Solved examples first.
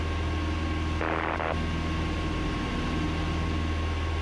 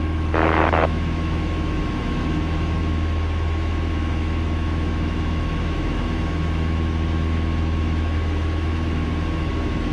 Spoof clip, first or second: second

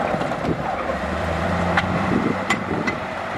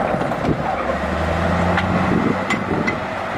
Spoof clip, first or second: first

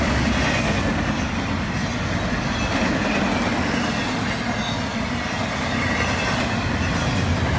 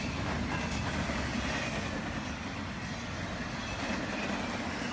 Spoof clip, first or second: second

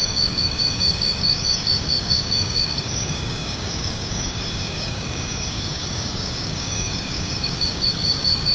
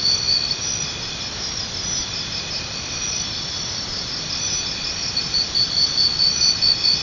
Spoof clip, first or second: first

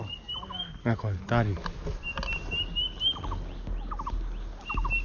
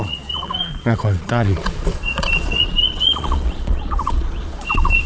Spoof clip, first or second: second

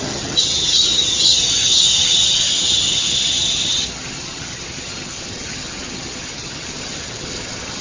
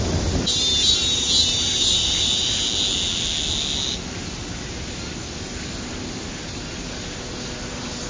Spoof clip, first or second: first